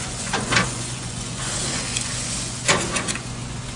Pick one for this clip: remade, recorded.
remade